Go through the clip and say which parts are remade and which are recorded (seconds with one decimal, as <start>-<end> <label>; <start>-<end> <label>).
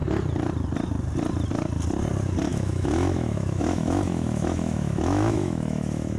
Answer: 0.0-2.5 recorded; 2.5-6.2 remade